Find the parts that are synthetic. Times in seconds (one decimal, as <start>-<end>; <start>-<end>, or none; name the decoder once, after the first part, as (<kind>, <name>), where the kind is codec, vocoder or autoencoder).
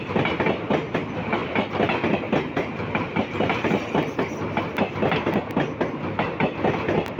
none